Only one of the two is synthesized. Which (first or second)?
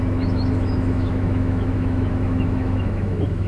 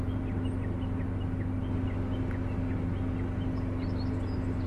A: first